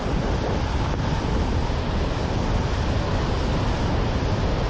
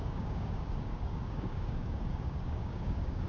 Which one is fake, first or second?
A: second